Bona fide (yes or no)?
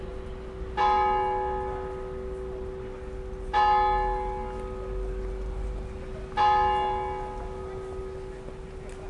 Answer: yes